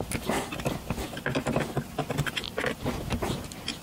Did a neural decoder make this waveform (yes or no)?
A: no